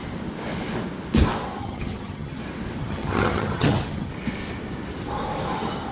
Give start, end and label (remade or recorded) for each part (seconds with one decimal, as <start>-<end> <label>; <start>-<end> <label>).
0.0-1.6 recorded; 1.6-2.4 remade; 2.4-2.8 recorded; 2.8-4.1 remade; 4.1-5.9 recorded